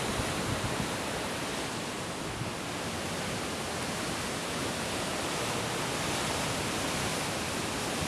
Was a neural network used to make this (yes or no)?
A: no